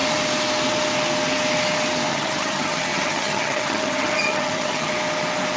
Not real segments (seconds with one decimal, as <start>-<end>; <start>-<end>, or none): 2.1-4.9